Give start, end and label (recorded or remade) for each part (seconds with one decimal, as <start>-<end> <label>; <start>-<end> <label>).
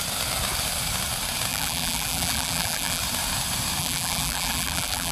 0.0-1.5 recorded; 1.5-3.0 remade; 3.0-3.8 recorded; 3.8-5.1 remade